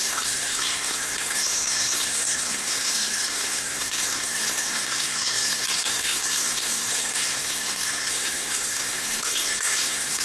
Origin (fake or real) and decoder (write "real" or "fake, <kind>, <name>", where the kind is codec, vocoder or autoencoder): fake, codec, SNAC